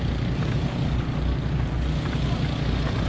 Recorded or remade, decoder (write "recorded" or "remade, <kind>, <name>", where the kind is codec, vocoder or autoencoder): recorded